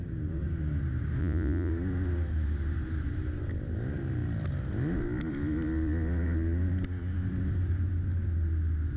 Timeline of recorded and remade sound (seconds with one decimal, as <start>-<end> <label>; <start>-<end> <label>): 0.0-1.2 recorded; 1.2-1.7 remade; 1.7-9.0 recorded